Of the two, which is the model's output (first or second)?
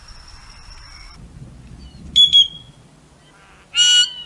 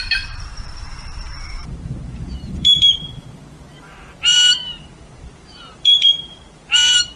second